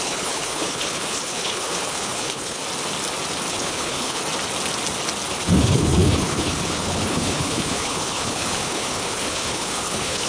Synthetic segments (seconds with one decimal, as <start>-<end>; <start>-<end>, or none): 0.0-2.6; 3.5-4.2; 5.4-10.3